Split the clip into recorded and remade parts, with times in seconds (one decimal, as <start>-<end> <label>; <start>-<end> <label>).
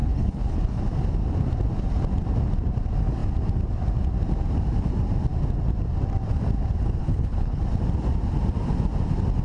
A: 0.0-0.8 remade; 0.8-7.0 recorded; 7.0-7.6 remade; 7.6-9.4 recorded